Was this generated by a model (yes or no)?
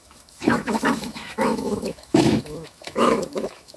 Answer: yes